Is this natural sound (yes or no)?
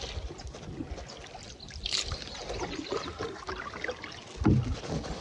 yes